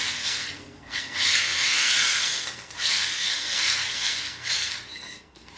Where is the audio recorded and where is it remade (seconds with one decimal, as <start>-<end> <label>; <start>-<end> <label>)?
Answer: 0.0-5.6 remade

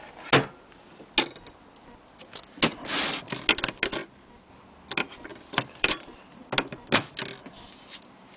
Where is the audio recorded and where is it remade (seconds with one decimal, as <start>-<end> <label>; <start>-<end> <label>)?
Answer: 0.0-4.0 recorded; 4.0-4.5 remade; 4.5-5.3 recorded; 5.3-5.9 remade; 5.9-8.4 recorded

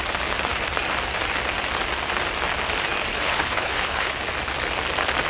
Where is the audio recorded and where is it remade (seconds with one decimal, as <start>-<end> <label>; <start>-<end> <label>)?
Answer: 0.0-3.1 recorded; 3.1-4.2 remade; 4.2-5.3 recorded

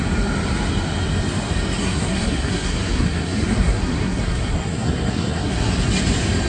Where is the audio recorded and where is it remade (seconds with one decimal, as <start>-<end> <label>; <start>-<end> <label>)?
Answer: 0.0-1.8 recorded; 1.8-5.7 remade; 5.7-6.5 recorded

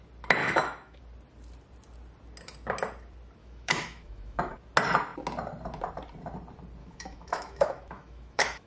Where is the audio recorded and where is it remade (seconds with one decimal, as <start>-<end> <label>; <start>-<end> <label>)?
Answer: 0.0-0.4 recorded; 0.4-1.0 remade; 1.0-3.4 recorded; 3.4-4.5 remade; 4.5-6.8 recorded; 6.8-8.7 remade